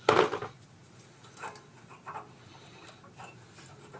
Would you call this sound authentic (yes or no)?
yes